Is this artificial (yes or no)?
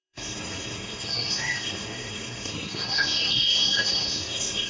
yes